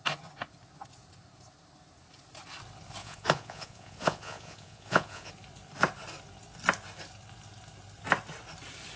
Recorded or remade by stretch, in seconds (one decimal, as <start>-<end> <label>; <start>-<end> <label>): 0.0-3.0 recorded; 3.0-5.3 remade; 5.3-9.0 recorded